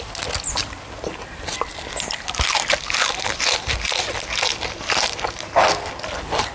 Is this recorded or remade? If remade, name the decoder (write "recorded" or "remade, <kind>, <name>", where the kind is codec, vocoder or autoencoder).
remade, vocoder, BigVGAN v2